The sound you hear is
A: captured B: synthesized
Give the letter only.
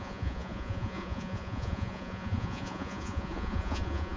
B